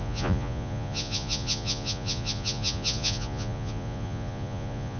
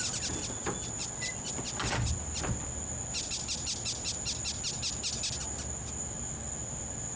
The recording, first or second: second